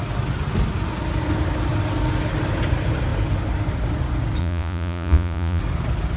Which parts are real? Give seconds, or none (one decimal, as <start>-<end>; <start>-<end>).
0.0-4.4; 5.6-6.2